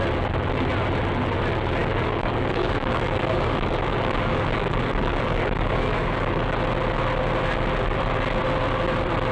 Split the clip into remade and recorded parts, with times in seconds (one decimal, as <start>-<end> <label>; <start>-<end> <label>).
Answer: 0.0-1.8 recorded; 1.8-6.5 remade; 6.5-9.3 recorded